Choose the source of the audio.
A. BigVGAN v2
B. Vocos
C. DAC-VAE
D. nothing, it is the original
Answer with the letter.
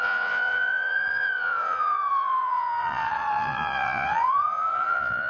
B